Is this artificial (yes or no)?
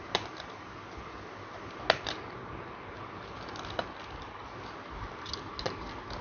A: no